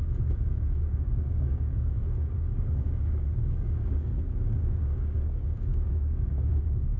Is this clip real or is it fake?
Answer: fake